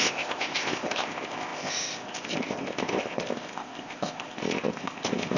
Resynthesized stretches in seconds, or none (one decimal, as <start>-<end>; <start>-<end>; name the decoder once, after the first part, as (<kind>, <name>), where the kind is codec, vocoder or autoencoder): 0.0-5.4 (codec, ZipCodec)